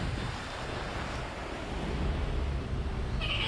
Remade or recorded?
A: recorded